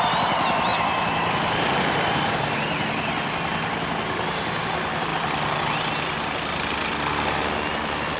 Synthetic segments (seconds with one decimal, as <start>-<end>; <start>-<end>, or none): none